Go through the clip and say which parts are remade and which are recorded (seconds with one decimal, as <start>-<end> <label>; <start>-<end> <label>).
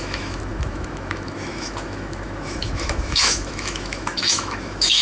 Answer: 0.0-5.0 remade